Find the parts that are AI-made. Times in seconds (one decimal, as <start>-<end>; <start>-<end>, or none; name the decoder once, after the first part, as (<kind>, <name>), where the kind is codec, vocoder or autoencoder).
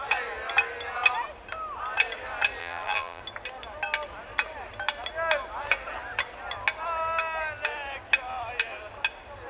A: 2.6-3.2 (vocoder, BigVGAN v2)